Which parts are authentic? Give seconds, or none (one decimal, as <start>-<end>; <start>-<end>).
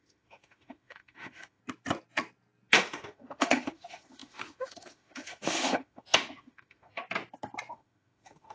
1.6-2.7; 7.0-7.7